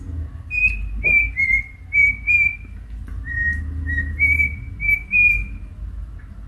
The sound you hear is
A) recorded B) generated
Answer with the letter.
A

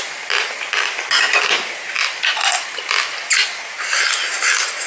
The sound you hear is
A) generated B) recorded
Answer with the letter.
B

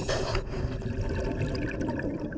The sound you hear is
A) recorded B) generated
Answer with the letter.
A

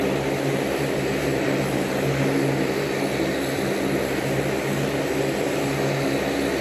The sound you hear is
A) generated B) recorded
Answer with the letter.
B